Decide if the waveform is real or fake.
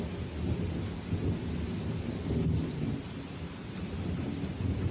real